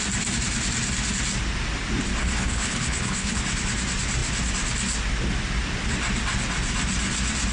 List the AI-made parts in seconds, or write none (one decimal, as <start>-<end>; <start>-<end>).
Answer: 2.2-3.4